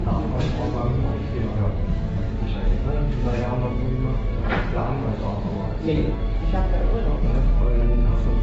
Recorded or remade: remade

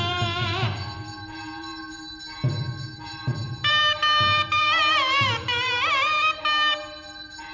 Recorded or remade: remade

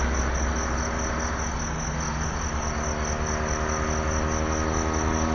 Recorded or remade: recorded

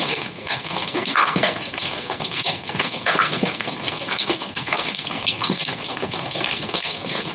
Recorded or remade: remade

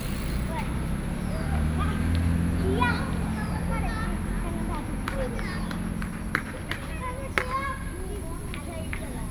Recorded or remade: recorded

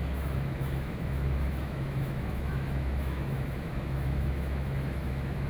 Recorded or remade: remade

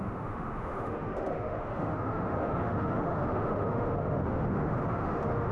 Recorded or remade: remade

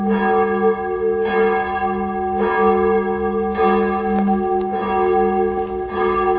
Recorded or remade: recorded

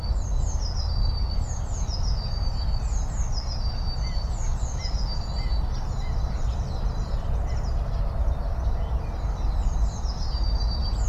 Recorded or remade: recorded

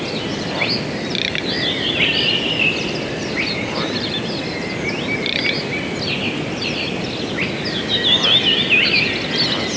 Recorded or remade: recorded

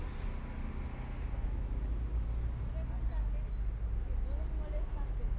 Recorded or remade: recorded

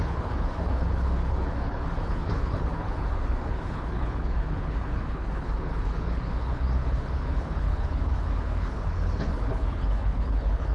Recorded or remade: remade